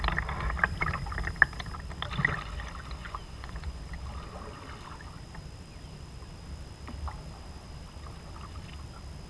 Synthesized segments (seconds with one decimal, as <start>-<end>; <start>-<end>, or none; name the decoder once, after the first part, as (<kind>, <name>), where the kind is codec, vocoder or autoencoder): 3.0-3.8 (vocoder, Vocos)